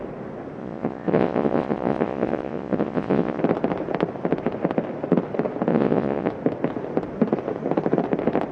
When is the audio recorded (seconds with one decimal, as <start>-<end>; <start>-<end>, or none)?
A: 0.0-0.6; 3.4-5.7; 6.3-8.5